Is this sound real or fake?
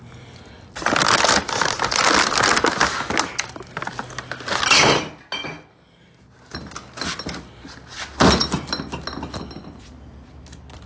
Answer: real